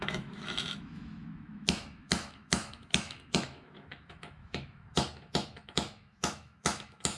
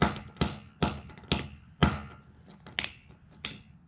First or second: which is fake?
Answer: first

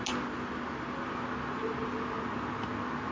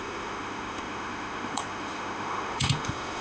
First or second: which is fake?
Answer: second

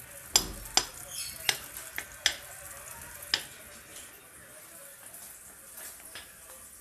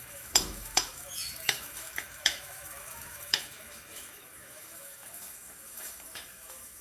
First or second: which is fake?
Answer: second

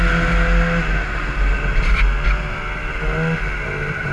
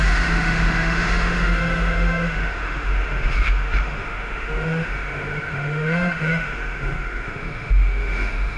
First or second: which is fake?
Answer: second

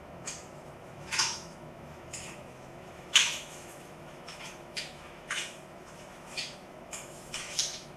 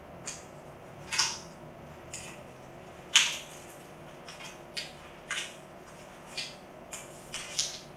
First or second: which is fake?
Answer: first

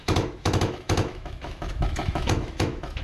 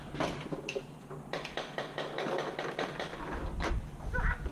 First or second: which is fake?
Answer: first